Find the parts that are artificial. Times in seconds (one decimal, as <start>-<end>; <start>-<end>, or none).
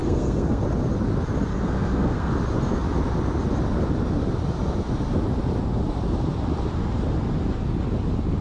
0.0-0.6; 1.5-2.3